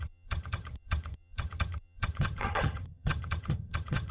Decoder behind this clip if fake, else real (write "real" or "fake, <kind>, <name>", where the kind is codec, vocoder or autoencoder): fake, vocoder, HiFi-GAN